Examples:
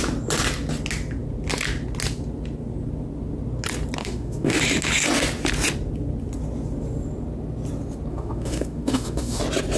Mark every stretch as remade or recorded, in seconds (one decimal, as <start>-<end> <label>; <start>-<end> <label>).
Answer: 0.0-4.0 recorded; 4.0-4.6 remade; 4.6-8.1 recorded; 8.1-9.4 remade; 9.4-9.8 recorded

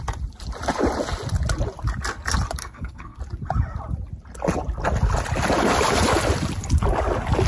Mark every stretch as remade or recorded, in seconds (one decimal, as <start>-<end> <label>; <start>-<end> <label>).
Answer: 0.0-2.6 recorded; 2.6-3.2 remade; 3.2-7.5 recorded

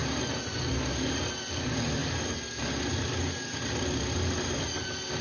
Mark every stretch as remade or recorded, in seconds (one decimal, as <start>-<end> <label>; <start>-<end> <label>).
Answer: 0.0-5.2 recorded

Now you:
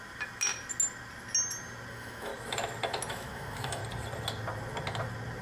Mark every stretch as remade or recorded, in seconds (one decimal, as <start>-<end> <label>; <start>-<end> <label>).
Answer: 0.0-1.9 recorded; 1.9-2.3 remade; 2.3-3.1 recorded; 3.1-3.8 remade; 3.8-5.4 recorded